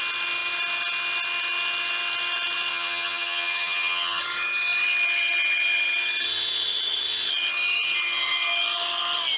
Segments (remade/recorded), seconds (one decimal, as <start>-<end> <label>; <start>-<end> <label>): 0.0-2.7 recorded; 2.7-4.2 remade; 4.2-9.4 recorded